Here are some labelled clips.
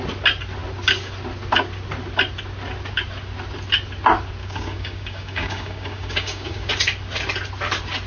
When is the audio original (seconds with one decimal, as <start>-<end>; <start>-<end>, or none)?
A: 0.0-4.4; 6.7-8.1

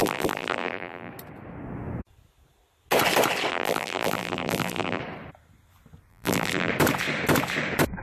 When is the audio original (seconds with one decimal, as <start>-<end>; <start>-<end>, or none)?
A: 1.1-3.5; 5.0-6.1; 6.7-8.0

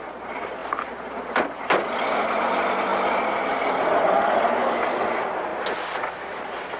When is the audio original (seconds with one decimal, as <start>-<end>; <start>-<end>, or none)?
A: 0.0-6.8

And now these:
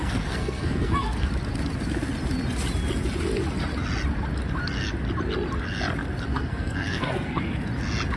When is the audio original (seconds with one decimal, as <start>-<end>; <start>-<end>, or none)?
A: 1.3-6.3; 7.4-8.2

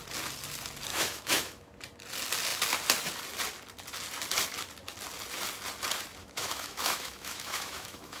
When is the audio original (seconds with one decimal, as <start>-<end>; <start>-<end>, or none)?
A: 0.0-0.9; 1.7-6.2

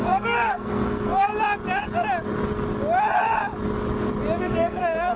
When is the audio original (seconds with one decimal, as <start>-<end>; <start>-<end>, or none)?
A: 1.3-4.4